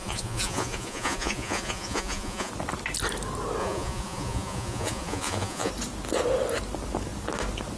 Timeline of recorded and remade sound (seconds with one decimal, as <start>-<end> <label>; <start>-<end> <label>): 0.0-2.5 remade; 2.5-3.6 recorded; 3.6-5.7 remade; 5.7-7.8 recorded